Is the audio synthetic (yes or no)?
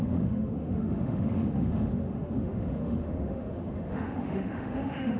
yes